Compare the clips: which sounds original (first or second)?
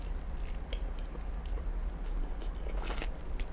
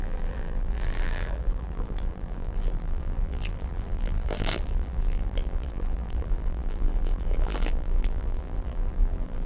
first